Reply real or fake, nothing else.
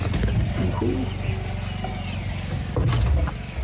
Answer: real